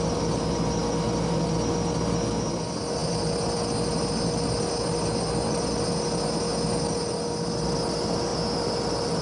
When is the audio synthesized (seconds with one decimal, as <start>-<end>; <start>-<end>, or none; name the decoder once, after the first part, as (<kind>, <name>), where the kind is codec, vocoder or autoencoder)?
none